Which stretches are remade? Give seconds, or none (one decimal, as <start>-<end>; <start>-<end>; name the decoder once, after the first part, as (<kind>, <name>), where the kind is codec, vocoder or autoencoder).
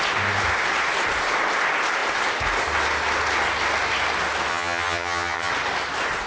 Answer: 4.5-5.5 (vocoder, HiFi-GAN)